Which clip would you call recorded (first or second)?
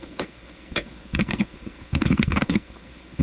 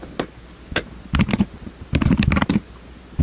second